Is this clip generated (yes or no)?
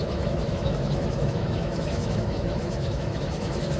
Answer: yes